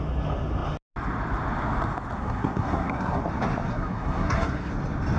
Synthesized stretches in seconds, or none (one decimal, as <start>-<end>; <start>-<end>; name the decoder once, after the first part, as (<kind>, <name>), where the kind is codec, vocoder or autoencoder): 2.2-3.2 (codec, SNAC); 3.7-4.7